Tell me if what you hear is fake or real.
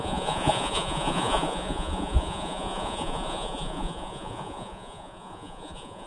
fake